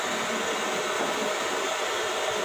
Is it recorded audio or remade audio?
recorded